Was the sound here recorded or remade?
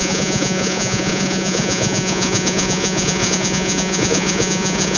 remade